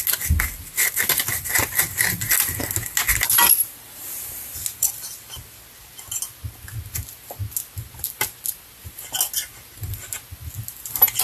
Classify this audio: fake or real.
real